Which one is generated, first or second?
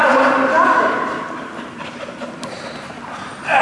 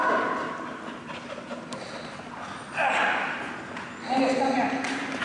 first